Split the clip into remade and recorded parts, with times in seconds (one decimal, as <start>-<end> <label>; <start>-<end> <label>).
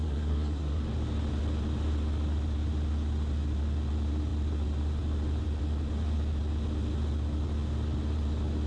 0.0-0.8 remade; 0.8-8.7 recorded